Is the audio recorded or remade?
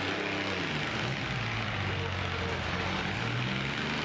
recorded